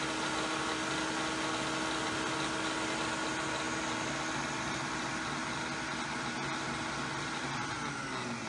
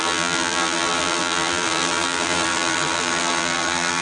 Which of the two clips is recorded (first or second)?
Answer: first